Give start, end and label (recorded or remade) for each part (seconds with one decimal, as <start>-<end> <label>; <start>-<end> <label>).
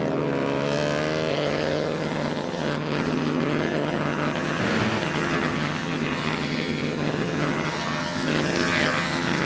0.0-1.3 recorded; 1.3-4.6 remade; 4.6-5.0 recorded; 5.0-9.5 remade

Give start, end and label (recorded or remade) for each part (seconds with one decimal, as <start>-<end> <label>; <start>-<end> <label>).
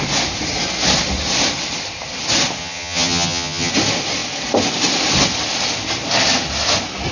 0.0-2.6 recorded; 2.6-3.7 remade; 3.7-7.1 recorded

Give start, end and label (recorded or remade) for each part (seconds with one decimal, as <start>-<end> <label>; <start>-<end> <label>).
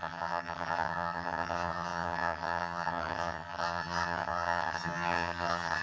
0.0-5.8 remade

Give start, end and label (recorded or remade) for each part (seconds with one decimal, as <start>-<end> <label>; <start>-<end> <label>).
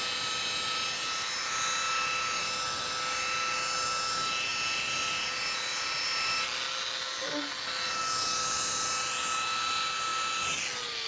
0.0-11.1 recorded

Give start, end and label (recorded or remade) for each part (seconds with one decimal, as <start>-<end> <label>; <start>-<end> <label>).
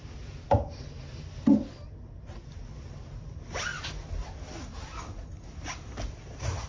0.0-6.7 recorded